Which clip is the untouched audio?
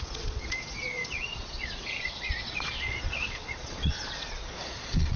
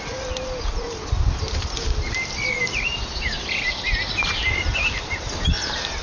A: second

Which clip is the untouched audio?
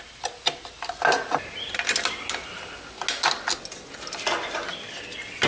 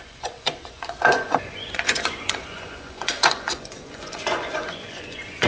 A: first